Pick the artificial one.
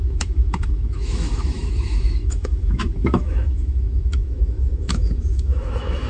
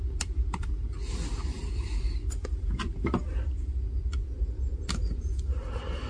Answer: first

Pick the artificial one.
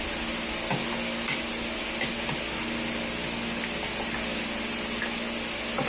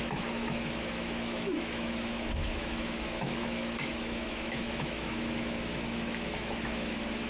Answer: second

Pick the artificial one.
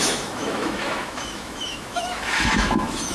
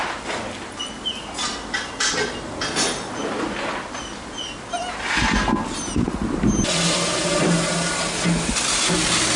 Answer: first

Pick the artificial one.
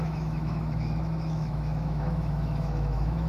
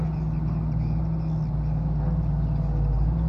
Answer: first